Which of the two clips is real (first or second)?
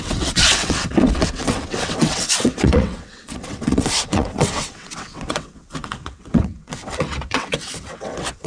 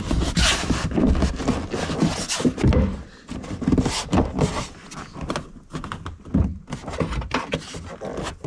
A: second